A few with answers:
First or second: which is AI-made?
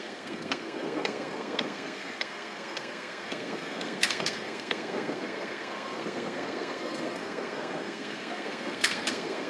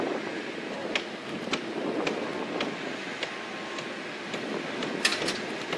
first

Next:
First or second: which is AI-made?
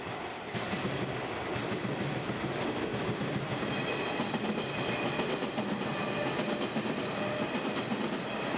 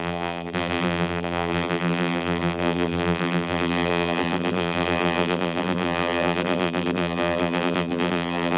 second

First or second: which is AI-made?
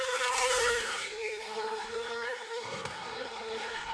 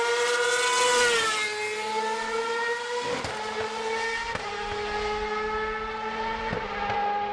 first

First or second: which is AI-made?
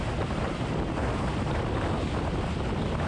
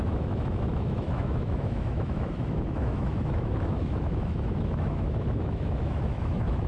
second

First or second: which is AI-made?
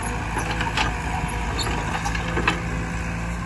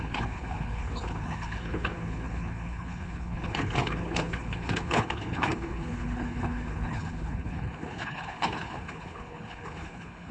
second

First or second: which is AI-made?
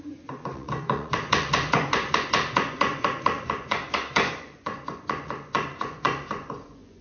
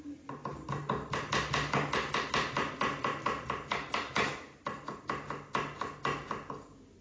first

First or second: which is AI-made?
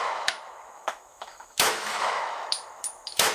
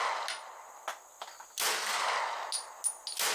first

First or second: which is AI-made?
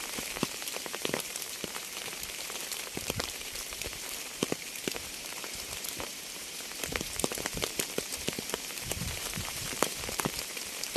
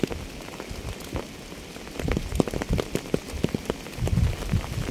first